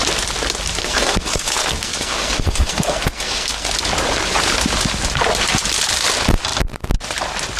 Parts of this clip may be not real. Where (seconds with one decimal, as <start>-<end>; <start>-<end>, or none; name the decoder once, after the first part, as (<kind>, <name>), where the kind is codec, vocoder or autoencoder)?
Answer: 0.8-3.7 (codec, SNAC)